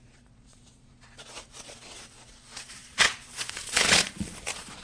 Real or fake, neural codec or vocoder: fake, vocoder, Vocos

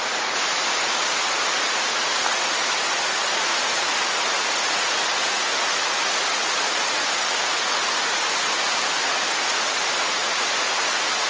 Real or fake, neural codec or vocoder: fake, vocoder, Vocos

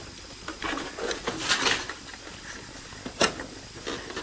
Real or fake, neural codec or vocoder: real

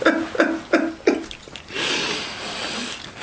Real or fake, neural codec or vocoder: real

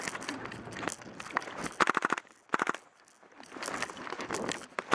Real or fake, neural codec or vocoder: real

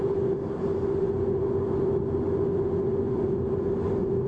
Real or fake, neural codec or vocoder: real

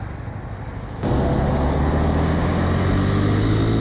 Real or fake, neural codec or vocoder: real